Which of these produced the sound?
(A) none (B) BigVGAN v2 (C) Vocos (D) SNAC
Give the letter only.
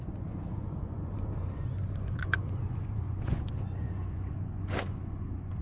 C